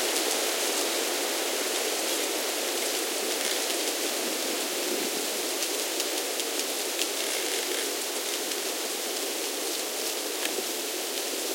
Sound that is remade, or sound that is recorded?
recorded